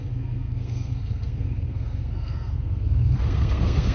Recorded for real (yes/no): no